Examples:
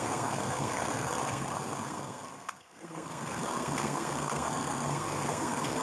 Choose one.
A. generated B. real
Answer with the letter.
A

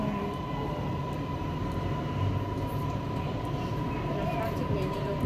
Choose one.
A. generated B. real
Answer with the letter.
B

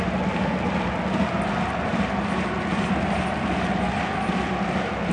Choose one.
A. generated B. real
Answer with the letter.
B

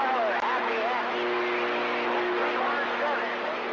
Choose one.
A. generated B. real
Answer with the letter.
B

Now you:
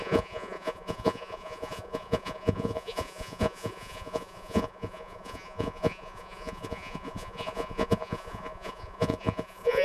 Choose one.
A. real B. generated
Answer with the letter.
B